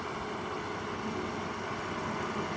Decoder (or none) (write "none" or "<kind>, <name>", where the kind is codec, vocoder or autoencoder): none